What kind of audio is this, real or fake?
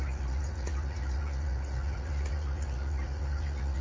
fake